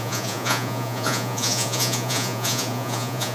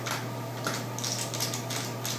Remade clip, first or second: first